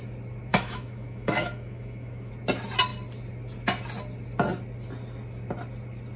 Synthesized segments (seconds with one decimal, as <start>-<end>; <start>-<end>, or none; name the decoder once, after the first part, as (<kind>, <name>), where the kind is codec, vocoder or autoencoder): 0.5-2.3 (autoencoder, DAC-VAE)